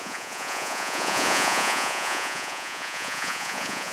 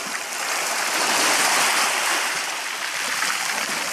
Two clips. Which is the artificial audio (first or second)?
first